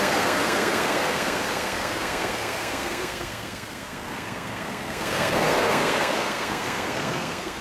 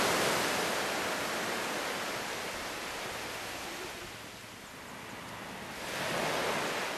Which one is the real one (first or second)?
second